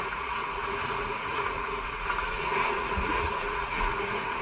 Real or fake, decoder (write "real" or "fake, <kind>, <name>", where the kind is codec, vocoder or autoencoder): fake, vocoder, Vocos